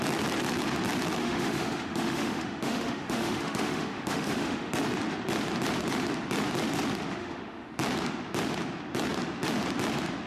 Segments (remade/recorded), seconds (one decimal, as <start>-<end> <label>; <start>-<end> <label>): 0.0-1.2 recorded; 1.2-4.7 remade; 4.7-7.2 recorded; 7.2-7.7 remade; 7.7-10.3 recorded

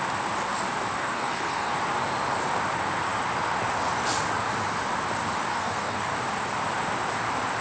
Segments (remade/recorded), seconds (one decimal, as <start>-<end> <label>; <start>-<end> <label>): 0.0-1.0 recorded; 1.0-1.7 remade; 1.7-5.5 recorded; 5.5-6.1 remade; 6.1-7.6 recorded

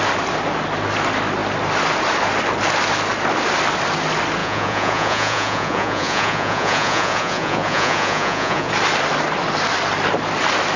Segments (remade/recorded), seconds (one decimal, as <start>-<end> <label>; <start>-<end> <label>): 0.0-4.4 recorded; 4.4-8.7 remade; 8.7-10.8 recorded

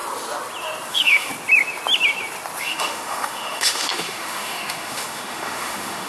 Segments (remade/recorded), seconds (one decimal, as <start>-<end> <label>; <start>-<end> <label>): 0.0-0.9 recorded; 0.9-1.3 remade; 1.3-2.6 recorded; 2.6-6.1 remade

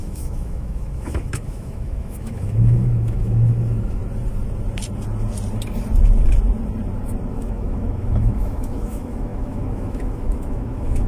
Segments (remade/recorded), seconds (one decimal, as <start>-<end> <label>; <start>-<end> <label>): 0.0-4.0 remade; 4.0-7.3 recorded; 7.3-11.1 remade